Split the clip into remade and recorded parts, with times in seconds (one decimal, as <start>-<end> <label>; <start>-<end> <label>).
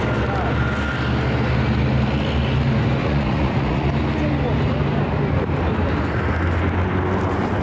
0.0-3.0 recorded; 3.0-3.9 remade; 3.9-7.6 recorded